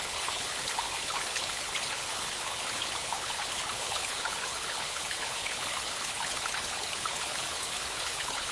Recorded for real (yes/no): no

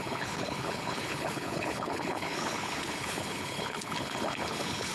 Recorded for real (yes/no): no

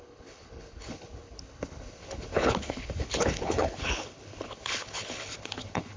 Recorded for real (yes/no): no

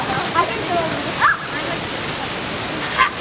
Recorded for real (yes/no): yes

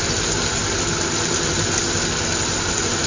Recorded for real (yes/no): yes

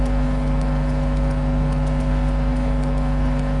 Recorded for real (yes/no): no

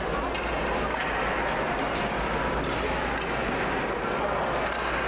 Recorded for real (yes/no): yes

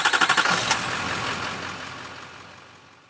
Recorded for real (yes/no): yes